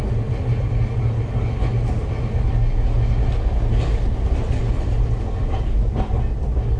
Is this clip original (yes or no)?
yes